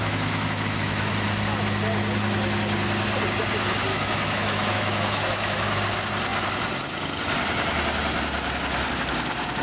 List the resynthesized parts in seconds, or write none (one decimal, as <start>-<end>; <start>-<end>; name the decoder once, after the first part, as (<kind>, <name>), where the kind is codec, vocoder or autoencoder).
0.0-1.1 (autoencoder, DAC-VAE); 3.9-5.8